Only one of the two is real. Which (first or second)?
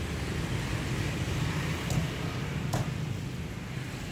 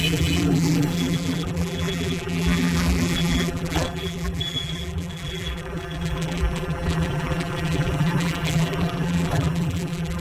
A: first